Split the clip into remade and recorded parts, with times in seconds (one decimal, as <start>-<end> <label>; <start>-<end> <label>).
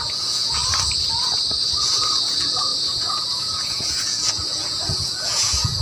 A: 0.0-0.6 remade; 0.6-2.2 recorded; 2.2-5.8 remade